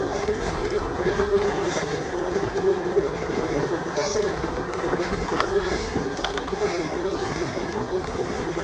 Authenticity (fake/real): fake